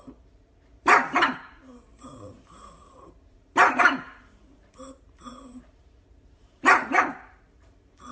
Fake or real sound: fake